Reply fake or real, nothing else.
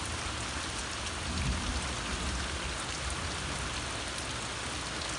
real